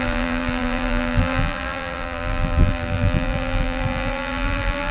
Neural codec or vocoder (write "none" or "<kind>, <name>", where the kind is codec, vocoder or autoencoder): vocoder, BigVGAN v2